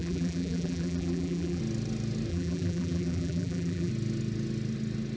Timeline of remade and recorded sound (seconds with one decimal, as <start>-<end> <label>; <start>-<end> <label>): 0.0-1.6 remade; 1.6-2.3 recorded; 2.3-3.9 remade; 3.9-5.2 recorded